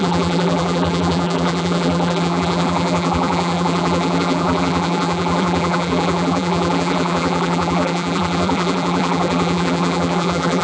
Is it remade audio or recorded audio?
remade